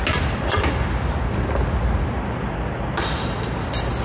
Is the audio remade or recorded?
recorded